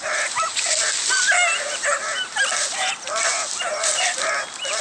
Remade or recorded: recorded